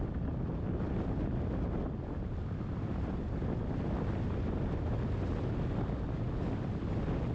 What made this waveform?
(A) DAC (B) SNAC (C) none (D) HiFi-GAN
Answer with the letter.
C